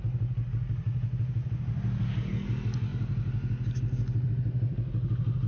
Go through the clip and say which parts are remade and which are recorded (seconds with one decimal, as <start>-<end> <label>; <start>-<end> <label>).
0.0-5.5 recorded